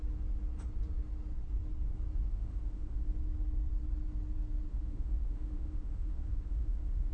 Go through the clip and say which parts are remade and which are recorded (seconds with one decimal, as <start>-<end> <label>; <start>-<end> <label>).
0.0-2.3 recorded; 2.3-3.1 remade; 3.1-4.7 recorded; 4.7-7.1 remade